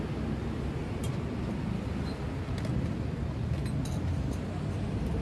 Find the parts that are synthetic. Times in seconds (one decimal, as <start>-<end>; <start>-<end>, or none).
none